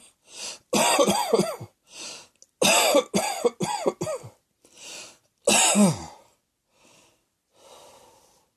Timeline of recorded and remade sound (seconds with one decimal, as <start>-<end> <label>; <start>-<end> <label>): 0.0-8.6 recorded